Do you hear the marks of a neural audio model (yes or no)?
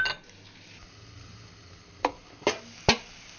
no